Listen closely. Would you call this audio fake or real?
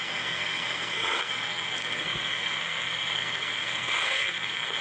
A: fake